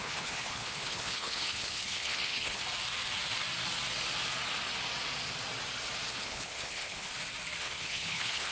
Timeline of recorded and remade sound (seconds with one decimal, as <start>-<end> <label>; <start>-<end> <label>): 0.0-2.6 remade; 2.6-6.1 recorded; 6.1-7.1 remade; 7.1-7.6 recorded; 7.6-8.5 remade